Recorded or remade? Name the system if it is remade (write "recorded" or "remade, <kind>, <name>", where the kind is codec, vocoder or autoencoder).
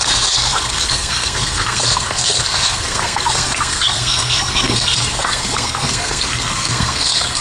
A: remade, codec, SNAC